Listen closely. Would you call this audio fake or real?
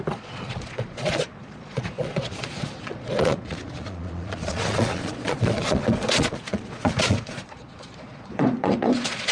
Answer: fake